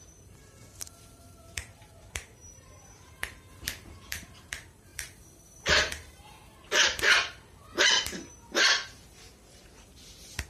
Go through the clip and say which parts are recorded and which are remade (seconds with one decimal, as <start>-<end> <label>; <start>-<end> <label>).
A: 0.0-6.4 remade; 6.4-7.3 recorded; 7.3-10.5 remade